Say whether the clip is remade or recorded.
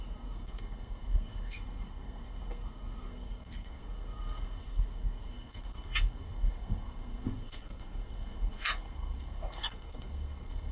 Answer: remade